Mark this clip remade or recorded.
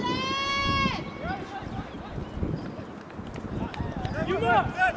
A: recorded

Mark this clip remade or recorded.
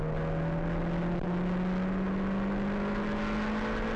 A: recorded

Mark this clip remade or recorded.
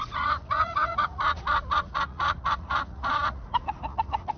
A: remade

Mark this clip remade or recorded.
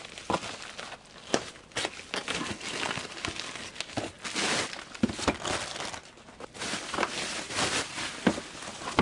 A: recorded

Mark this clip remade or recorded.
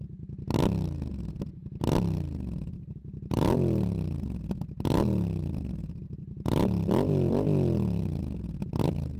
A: recorded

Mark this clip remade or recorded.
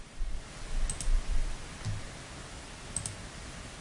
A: recorded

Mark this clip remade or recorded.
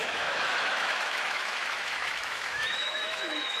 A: remade